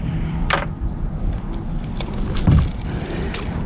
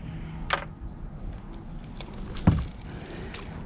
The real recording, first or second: second